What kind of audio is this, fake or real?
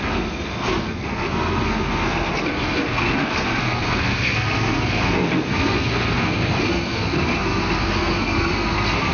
fake